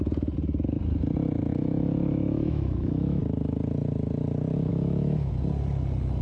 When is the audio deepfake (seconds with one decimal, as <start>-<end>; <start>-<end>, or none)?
1.5-3.2; 4.7-5.3